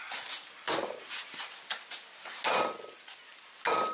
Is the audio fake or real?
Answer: real